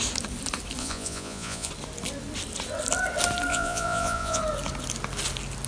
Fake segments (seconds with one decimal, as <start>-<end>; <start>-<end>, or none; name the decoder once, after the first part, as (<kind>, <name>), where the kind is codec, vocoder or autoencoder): 0.8-1.7 (vocoder, Vocos); 3.5-4.4